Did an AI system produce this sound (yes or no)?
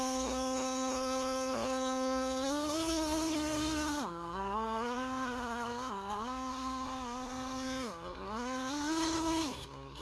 yes